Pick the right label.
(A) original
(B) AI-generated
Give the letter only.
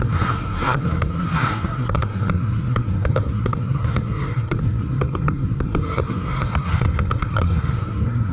B